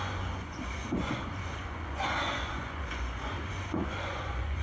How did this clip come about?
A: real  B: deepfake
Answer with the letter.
B